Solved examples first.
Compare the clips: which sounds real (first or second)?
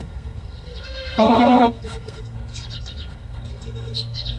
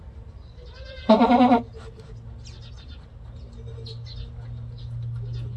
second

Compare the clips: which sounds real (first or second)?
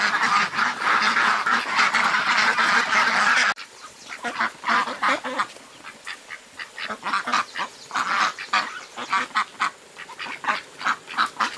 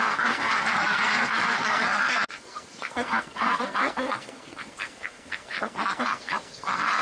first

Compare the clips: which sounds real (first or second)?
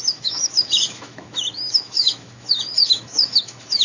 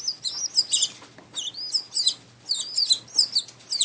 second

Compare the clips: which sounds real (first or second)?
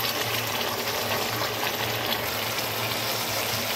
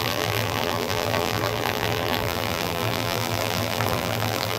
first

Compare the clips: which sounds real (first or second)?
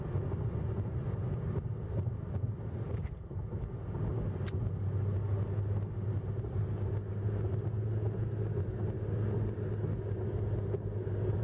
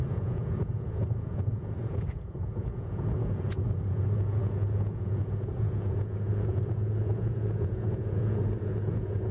first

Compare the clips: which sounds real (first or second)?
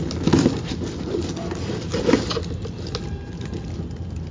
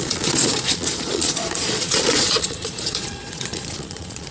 first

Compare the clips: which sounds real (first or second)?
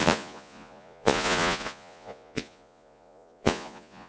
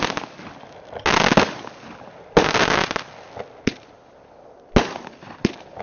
second